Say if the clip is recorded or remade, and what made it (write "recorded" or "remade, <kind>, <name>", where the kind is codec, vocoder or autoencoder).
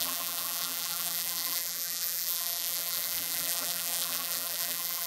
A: remade, vocoder, BigVGAN v2